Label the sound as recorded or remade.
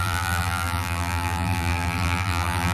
remade